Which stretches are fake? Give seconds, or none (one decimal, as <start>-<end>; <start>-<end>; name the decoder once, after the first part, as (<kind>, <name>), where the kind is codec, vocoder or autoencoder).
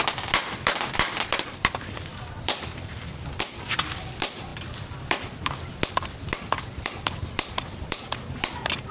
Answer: 0.0-8.9 (vocoder, BigVGAN v2)